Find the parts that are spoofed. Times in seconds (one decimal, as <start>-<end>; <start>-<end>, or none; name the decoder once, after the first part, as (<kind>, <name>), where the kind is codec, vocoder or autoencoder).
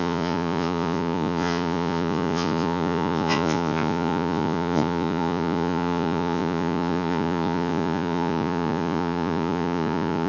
0.0-10.3 (vocoder, Vocos)